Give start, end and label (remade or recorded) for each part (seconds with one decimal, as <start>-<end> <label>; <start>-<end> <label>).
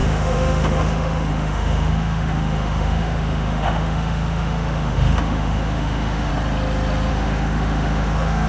0.0-6.3 remade; 6.3-7.1 recorded; 7.1-8.5 remade